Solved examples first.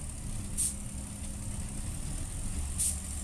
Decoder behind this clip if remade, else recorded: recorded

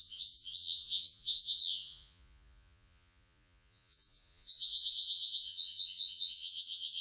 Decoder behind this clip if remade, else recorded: remade, vocoder, Vocos